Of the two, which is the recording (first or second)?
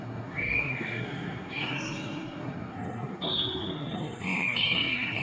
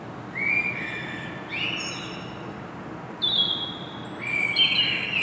second